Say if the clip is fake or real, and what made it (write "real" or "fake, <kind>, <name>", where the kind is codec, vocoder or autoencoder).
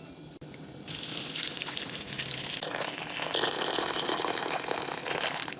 real